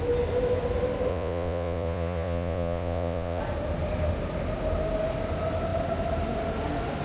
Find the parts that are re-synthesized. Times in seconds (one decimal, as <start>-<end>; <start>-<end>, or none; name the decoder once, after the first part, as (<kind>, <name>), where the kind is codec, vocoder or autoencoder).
1.1-3.4 (vocoder, Vocos)